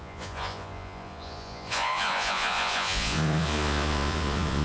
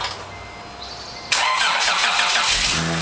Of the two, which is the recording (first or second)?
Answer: second